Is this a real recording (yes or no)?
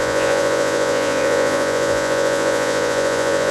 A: no